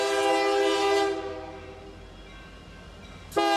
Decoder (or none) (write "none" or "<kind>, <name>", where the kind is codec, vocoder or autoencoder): none